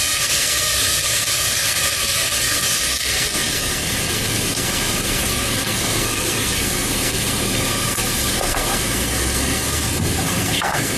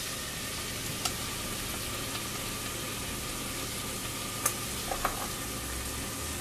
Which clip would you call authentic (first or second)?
second